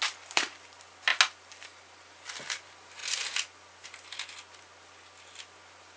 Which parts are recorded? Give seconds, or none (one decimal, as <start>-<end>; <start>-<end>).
0.0-6.0